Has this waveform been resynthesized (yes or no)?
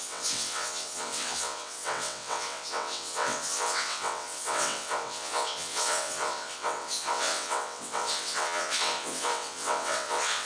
yes